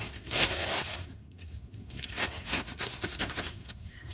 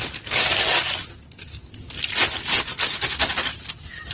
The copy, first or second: first